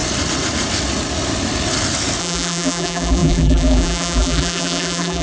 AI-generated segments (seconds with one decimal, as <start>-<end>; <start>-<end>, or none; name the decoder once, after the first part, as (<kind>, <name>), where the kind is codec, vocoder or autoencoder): 2.2-5.2 (vocoder, BigVGAN v2)